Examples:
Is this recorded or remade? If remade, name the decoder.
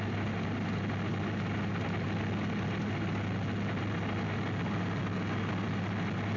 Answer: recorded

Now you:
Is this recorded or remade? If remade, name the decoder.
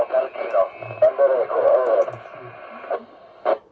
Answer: recorded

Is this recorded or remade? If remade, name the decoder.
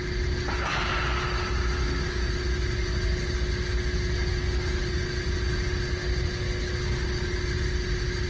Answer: recorded